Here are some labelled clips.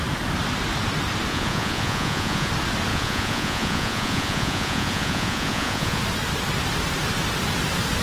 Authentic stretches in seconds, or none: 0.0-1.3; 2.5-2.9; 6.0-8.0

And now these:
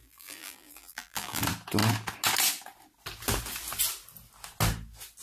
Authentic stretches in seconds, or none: 1.4-5.2

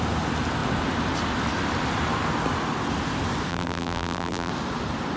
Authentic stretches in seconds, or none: 0.0-3.5; 4.5-5.2

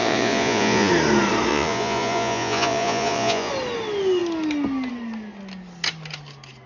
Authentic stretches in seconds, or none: 0.9-1.5; 3.5-6.7

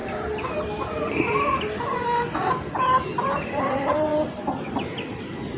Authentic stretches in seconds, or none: 0.0-3.4; 4.1-4.7

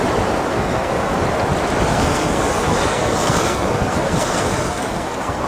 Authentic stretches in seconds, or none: 0.0-0.5; 1.1-1.9

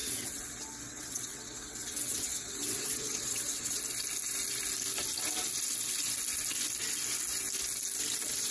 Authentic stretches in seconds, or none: 3.8-8.5